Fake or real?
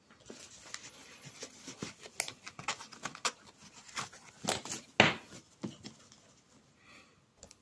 real